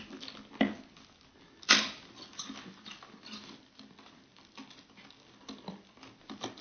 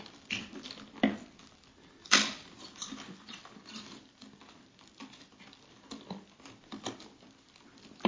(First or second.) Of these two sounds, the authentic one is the first